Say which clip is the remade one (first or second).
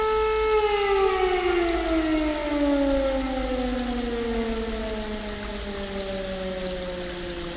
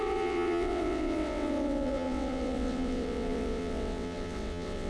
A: second